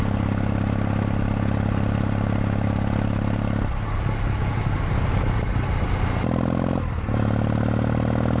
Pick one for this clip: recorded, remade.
recorded